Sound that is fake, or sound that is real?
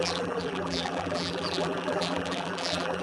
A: fake